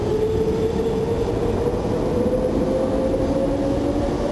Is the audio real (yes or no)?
yes